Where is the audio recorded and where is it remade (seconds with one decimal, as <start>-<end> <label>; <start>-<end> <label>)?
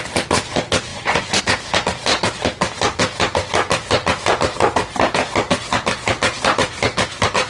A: 0.0-0.9 recorded; 0.9-1.4 remade; 1.4-7.5 recorded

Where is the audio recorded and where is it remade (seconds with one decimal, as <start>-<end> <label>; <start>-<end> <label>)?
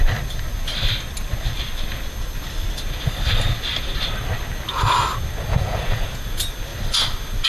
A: 0.0-5.5 recorded; 5.5-6.2 remade; 6.2-7.5 recorded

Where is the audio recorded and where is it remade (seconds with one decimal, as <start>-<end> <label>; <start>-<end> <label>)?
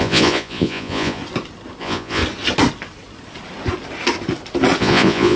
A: 0.0-1.2 remade; 1.2-1.8 recorded; 1.8-2.2 remade; 2.2-4.8 recorded; 4.8-5.4 remade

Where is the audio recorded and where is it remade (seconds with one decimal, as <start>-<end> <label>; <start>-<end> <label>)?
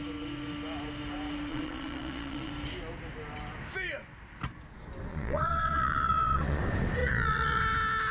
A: 0.0-1.5 recorded; 1.5-2.5 remade; 2.5-5.1 recorded; 5.1-6.6 remade; 6.6-7.0 recorded; 7.0-7.6 remade; 7.6-8.1 recorded